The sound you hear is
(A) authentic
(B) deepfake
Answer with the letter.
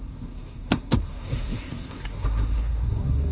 B